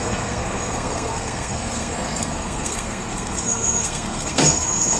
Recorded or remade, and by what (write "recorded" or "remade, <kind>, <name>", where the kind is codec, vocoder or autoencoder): remade, codec, SNAC